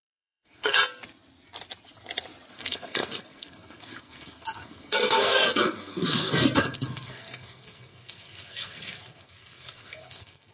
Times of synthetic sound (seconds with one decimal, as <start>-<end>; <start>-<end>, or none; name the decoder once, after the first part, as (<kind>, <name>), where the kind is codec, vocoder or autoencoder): 0.0-0.8 (codec, SNAC); 2.5-10.5